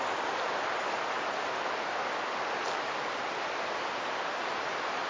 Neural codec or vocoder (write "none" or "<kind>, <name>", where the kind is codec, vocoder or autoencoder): none